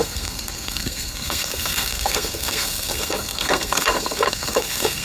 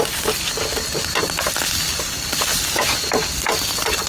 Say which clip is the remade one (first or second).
first